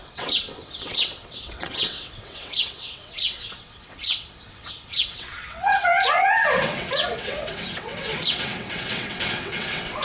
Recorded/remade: remade